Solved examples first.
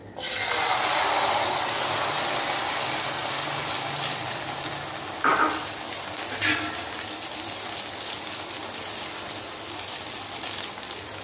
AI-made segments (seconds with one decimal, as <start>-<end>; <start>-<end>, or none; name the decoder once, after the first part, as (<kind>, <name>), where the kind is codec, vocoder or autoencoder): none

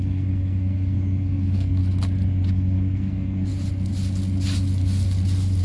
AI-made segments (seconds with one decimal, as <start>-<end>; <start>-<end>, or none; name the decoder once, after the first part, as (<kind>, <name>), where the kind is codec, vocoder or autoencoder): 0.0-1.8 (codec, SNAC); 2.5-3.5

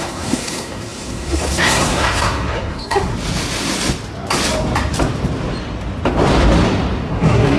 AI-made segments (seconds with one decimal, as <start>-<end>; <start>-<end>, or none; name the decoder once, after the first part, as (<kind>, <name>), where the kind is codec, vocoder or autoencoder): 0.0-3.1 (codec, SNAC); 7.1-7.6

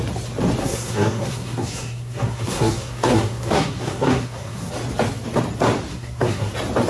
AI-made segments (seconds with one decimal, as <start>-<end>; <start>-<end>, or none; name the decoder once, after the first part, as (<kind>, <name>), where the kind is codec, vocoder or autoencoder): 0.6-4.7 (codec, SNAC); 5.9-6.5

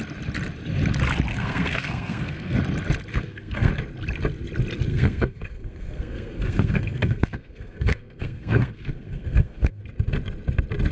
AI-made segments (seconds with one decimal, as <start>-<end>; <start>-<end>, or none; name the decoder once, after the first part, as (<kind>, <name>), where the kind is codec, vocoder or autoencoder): 1.3-2.6 (codec, SNAC); 3.1-3.7; 4.9-9.8

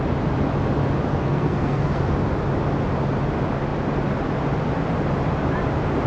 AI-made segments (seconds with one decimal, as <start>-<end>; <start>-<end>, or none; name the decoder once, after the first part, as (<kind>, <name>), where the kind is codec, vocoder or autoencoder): 1.1-2.0 (codec, SNAC)